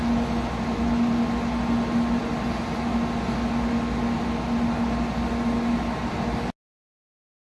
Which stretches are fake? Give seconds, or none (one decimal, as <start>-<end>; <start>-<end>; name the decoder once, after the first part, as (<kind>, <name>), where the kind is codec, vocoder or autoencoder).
none